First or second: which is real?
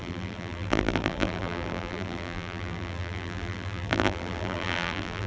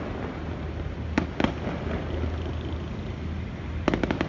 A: second